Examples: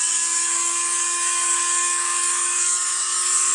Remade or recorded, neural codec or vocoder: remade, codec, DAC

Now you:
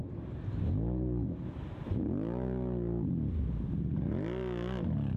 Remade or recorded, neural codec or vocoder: recorded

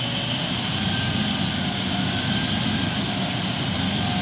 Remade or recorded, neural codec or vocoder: recorded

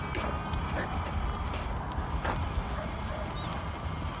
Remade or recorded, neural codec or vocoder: recorded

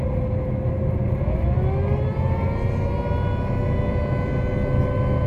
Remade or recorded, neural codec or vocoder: recorded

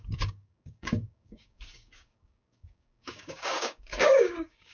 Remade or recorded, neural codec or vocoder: remade, codec, DAC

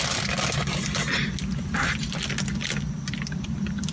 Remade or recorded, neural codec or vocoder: recorded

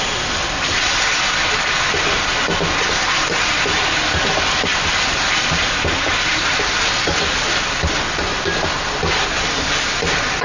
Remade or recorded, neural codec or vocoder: recorded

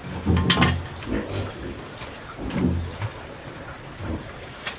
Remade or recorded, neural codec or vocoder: recorded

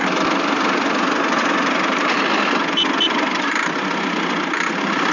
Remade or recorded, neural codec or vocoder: recorded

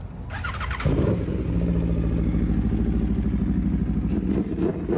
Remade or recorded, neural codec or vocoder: recorded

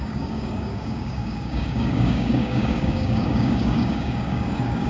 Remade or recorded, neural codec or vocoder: remade, codec, DAC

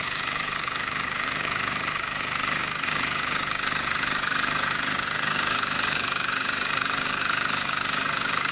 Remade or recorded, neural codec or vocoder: remade, codec, DAC